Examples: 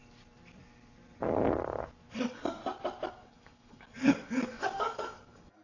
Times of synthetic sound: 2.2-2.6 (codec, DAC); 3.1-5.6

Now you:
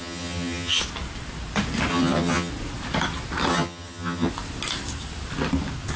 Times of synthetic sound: 0.0-0.8 (vocoder, HiFi-GAN); 1.9-2.5; 3.5-4.3

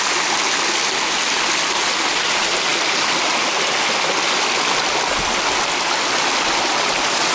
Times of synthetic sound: none

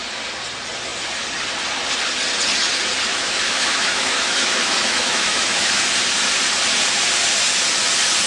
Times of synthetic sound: 3.1-5.8 (autoencoder, DAC-VAE)